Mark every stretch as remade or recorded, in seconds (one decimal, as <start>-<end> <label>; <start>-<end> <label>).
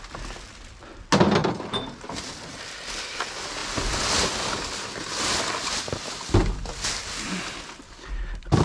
0.0-1.4 recorded; 1.4-2.6 remade; 2.6-8.6 recorded